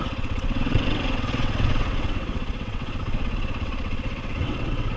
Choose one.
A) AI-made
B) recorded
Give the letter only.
A